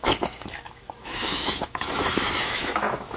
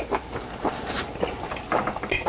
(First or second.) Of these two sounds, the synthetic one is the first